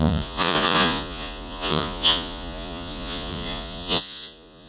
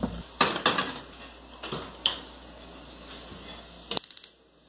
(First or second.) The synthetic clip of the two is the first